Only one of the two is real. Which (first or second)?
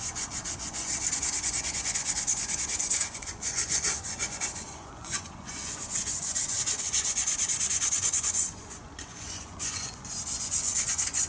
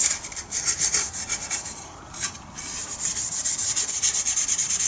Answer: second